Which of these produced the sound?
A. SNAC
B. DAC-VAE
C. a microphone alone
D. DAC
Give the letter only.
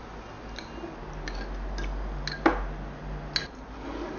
C